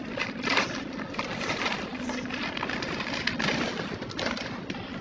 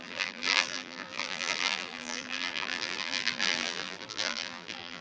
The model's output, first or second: second